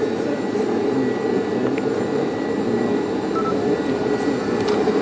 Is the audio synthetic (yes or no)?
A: no